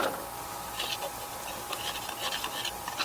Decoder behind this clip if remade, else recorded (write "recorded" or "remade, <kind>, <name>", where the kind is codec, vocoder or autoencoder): recorded